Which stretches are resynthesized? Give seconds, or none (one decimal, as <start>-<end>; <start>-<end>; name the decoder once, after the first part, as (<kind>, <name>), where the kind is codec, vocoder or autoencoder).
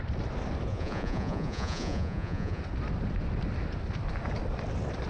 0.7-2.6 (vocoder, Vocos)